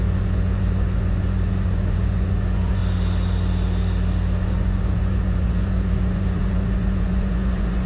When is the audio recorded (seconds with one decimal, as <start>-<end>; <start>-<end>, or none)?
2.8-4.4